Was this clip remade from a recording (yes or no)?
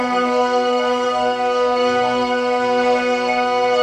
yes